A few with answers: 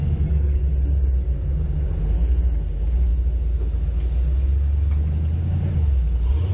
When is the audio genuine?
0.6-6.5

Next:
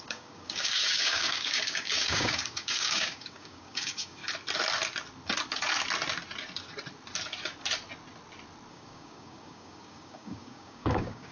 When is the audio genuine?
4.2-8.7

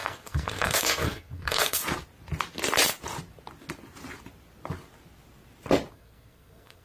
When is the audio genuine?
1.8-5.9

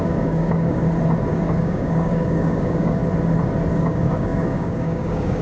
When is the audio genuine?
0.8-1.3; 3.0-3.7

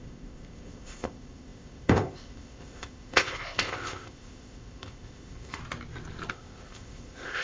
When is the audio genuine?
5.6-6.3

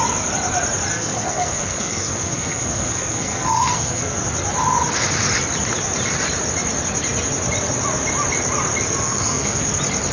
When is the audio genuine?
0.0-0.9; 4.2-9.0; 9.7-10.1